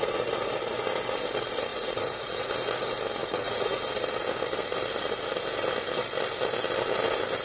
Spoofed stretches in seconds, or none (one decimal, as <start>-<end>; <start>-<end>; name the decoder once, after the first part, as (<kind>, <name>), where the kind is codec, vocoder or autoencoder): 1.7-2.5 (vocoder, Vocos); 3.2-3.8